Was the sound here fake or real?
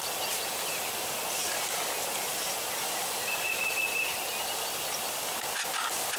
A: real